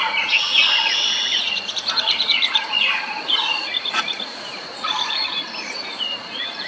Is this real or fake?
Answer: fake